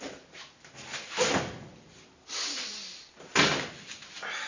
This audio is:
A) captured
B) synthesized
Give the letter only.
A